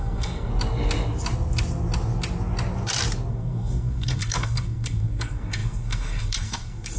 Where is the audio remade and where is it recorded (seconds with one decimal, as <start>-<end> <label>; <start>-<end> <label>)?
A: 0.0-0.5 remade; 0.5-3.3 recorded; 3.3-7.0 remade

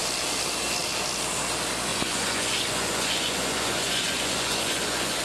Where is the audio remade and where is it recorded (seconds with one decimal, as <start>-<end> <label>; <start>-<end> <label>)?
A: 0.0-1.9 recorded; 1.9-5.2 remade

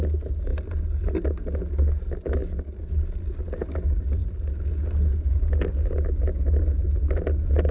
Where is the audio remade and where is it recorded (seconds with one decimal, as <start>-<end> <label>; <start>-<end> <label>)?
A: 0.0-2.4 recorded; 2.4-3.2 remade; 3.2-7.7 recorded

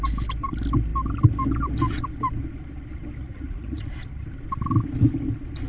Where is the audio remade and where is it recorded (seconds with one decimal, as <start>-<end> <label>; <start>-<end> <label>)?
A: 0.0-3.2 recorded; 3.2-3.8 remade; 3.8-5.7 recorded

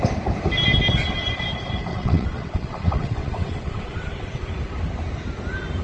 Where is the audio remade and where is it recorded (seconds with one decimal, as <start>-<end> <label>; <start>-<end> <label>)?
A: 0.0-1.9 recorded; 1.9-4.5 remade; 4.5-5.8 recorded

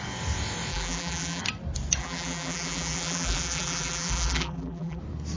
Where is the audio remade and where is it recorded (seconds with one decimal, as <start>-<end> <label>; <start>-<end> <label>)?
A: 0.0-0.7 recorded; 0.7-1.4 remade; 1.4-2.0 recorded; 2.0-5.0 remade; 5.0-5.4 recorded